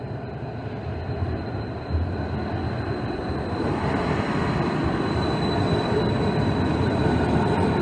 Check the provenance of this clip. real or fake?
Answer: real